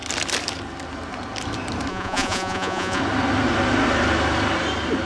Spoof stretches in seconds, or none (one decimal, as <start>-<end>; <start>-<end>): 1.9-3.0